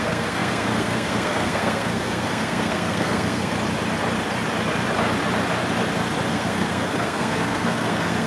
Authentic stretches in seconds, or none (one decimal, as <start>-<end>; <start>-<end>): 3.5-6.3